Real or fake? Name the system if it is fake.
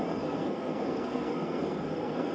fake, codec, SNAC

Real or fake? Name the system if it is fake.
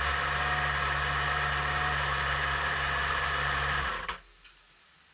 real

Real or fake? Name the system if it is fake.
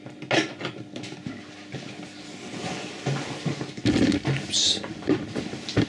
real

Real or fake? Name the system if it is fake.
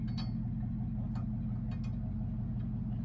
real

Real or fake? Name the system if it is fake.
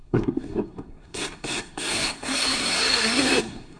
fake, codec, SNAC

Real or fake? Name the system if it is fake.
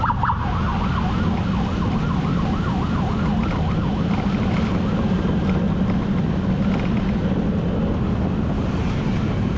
real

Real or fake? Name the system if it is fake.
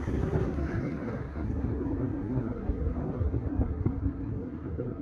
fake, codec, SNAC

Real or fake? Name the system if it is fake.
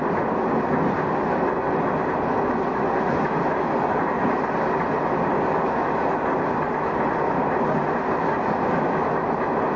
real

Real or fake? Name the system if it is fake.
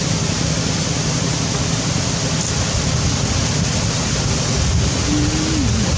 real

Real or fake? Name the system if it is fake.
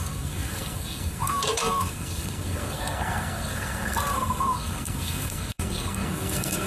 fake, codec, SNAC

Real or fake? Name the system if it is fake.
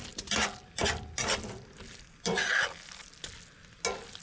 real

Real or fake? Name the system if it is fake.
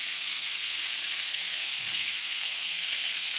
fake, codec, SNAC